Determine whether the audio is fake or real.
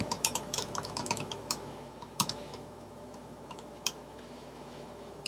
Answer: fake